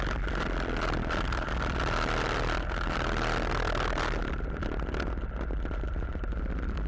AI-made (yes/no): yes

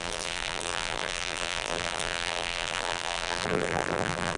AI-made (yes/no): yes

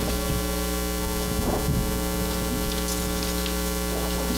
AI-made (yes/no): no